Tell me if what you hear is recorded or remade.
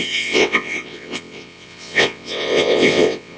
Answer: remade